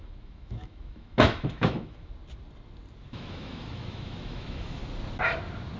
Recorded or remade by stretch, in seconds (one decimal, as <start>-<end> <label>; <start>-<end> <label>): 0.0-2.1 remade; 2.1-3.0 recorded; 3.0-4.8 remade; 4.8-5.8 recorded